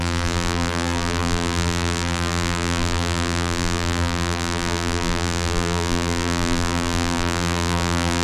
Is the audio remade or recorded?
remade